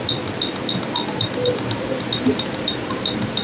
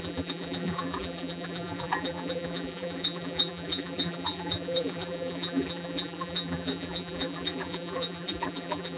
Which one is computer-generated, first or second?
second